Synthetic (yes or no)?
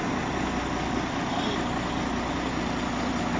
no